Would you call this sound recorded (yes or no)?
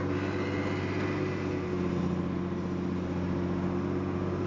yes